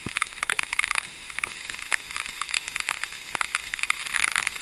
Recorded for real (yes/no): no